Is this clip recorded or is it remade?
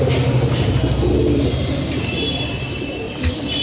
recorded